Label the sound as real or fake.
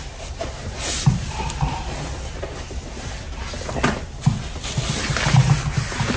real